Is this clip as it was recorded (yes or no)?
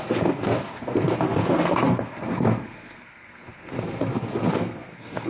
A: no